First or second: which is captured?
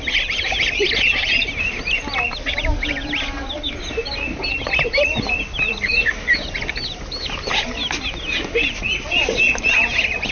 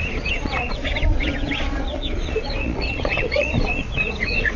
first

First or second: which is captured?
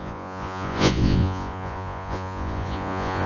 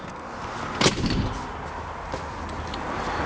second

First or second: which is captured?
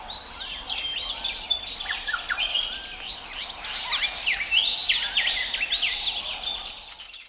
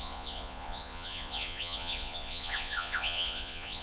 first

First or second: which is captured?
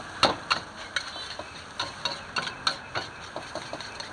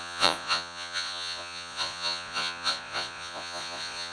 first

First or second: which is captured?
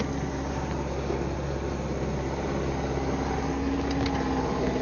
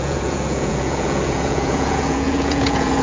first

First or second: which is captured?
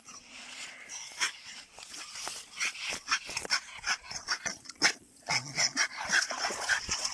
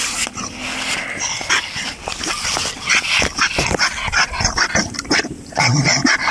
second